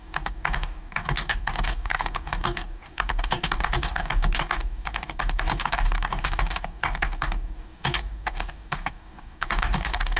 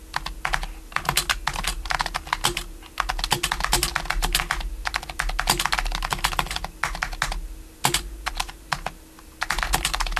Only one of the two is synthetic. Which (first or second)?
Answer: first